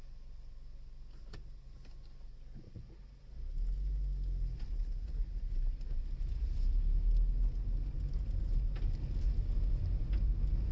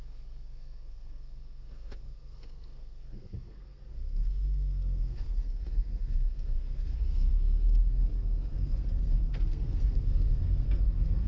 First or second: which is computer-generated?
second